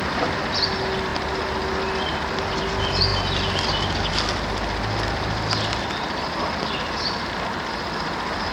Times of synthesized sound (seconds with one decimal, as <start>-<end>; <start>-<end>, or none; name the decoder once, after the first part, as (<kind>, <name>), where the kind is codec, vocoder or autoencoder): none

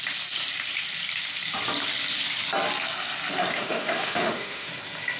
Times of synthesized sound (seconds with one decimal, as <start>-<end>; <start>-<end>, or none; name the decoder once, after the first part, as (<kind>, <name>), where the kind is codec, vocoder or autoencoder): 3.5-4.7 (autoencoder, DAC-VAE)

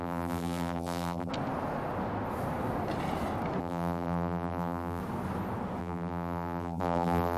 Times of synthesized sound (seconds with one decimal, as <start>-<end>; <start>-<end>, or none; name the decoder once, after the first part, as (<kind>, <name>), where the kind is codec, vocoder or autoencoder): 0.0-1.3 (vocoder, BigVGAN v2); 3.6-5.0; 5.8-7.4

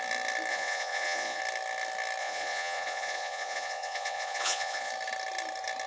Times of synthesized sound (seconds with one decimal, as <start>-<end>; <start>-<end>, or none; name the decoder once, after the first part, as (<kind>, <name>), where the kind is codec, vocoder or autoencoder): 0.5-1.4 (vocoder, Vocos); 2.2-4.9

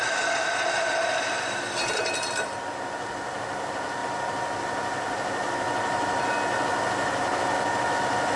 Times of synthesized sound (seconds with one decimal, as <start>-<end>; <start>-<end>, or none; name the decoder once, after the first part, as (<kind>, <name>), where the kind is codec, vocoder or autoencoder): none

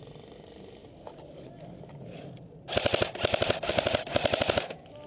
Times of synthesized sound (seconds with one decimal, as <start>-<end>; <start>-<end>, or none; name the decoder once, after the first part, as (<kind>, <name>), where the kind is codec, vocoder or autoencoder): none

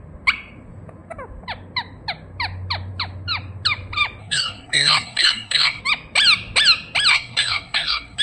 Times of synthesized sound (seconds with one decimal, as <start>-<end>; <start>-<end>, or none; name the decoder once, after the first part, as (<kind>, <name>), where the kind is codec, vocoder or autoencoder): 4.2-5.8 (codec, SNAC); 7.1-8.2

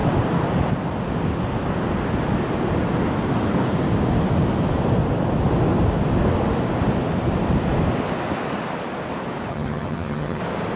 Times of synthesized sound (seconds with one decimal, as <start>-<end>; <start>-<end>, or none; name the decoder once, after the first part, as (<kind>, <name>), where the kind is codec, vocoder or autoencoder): 9.5-10.4 (vocoder, HiFi-GAN)